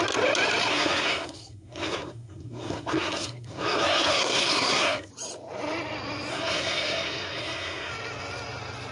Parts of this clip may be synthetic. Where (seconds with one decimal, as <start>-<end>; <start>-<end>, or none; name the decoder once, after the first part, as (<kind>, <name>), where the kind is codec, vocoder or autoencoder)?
0.7-5.1 (codec, SNAC); 6.3-7.9